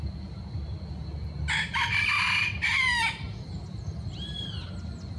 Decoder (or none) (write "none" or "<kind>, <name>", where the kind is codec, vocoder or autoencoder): none